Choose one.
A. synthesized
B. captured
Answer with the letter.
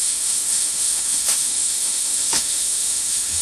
A